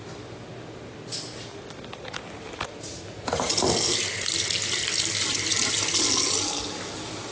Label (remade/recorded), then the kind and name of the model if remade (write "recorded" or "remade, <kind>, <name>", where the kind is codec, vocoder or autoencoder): recorded